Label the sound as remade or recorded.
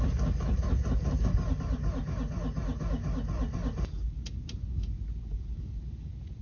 recorded